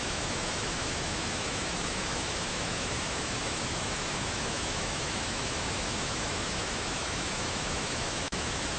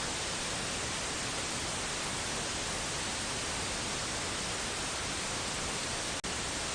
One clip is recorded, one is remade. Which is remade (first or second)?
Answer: first